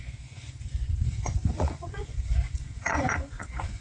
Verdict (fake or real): fake